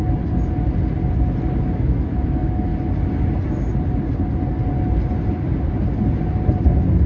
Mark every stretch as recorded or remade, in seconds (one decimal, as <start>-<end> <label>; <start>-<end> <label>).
0.0-1.6 recorded; 1.6-2.7 remade; 2.7-7.1 recorded